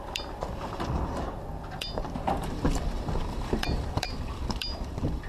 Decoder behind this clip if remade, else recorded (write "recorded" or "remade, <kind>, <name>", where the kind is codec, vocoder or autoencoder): remade, vocoder, BigVGAN v2